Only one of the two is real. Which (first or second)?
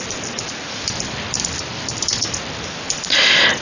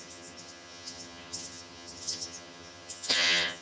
first